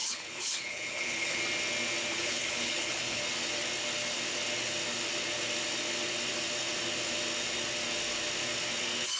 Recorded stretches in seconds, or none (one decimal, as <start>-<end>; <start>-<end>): 1.4-2.1; 3.2-9.2